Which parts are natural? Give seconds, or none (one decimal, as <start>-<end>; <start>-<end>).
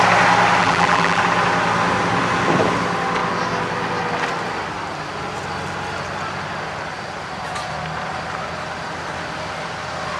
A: 0.0-0.6; 1.2-10.2